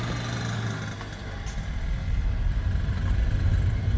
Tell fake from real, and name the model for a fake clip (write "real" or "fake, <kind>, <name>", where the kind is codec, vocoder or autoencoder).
real